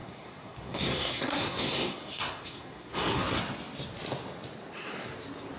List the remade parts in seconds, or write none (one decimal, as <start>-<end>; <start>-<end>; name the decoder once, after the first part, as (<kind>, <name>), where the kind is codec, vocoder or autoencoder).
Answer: 0.0-3.4 (codec, SNAC)